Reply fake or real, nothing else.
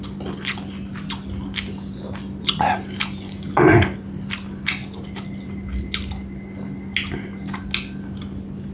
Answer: real